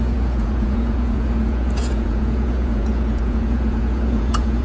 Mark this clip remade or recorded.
remade